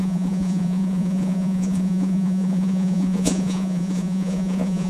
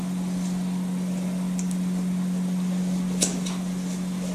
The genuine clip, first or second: second